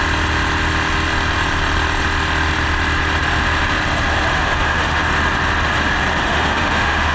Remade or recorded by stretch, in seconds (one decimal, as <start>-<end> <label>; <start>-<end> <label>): 0.0-4.3 recorded; 4.3-5.0 remade; 5.0-6.2 recorded; 6.2-7.1 remade